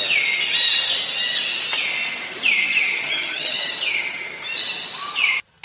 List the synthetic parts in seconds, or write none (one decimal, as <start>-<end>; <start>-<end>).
2.7-3.7